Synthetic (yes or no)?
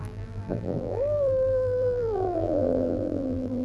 yes